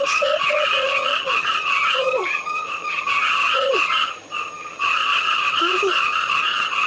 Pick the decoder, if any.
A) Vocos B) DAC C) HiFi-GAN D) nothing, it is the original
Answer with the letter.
C